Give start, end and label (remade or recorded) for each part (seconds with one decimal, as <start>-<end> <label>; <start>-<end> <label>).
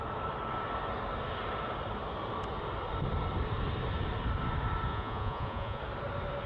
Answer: 0.0-4.9 recorded; 4.9-5.8 remade; 5.8-6.5 recorded